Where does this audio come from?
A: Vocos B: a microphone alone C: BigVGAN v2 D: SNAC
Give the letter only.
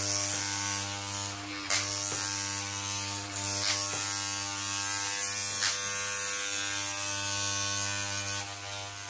B